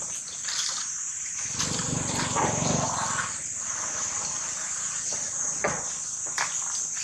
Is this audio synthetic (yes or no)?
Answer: no